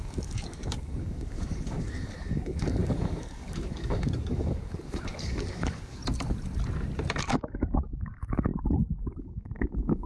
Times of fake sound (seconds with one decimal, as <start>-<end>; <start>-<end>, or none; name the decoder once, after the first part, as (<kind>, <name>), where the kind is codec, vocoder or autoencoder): 0.0-6.0 (codec, DAC); 7.2-8.5; 9.2-10.1